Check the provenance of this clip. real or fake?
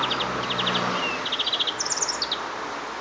real